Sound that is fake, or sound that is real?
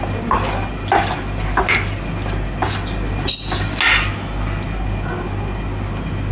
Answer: real